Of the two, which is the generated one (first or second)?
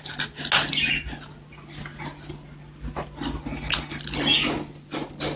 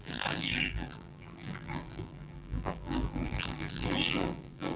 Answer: second